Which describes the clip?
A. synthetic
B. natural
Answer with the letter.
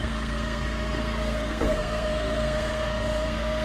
A